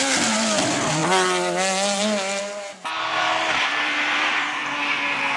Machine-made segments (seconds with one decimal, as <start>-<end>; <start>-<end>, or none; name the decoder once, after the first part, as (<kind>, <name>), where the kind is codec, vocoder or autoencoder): 3.1-4.6 (vocoder, BigVGAN v2)

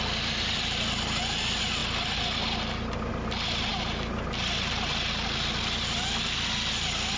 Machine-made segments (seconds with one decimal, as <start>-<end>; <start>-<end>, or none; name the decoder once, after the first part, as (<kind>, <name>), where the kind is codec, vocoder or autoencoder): none

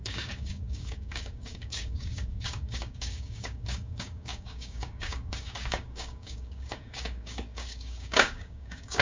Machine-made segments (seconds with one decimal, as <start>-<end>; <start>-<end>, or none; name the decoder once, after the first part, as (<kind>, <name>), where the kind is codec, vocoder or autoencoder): 0.0-9.0 (codec, DAC)